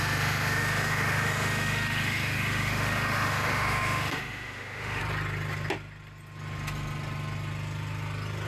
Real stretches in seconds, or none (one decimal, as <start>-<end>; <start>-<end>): 5.0-8.5